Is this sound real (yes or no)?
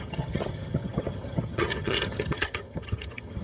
no